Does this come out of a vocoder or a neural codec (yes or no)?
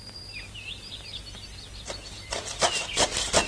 no